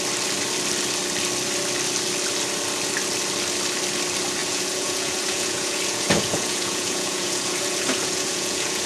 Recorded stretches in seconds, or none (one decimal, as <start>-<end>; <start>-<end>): 0.0-4.4